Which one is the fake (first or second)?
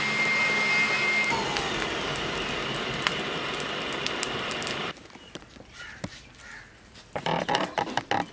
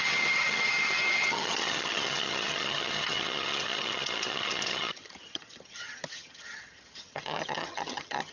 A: second